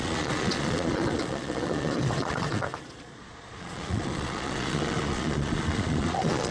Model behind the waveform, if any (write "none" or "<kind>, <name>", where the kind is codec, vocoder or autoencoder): vocoder, Vocos